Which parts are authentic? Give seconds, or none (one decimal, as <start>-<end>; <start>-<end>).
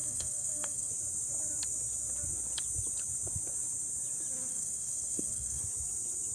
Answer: 0.9-4.5; 5.6-6.3